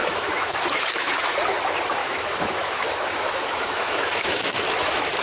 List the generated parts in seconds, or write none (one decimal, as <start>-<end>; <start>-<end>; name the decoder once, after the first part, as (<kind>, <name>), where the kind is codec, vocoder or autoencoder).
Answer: 0.0-1.3 (autoencoder, DAC-VAE); 2.0-5.2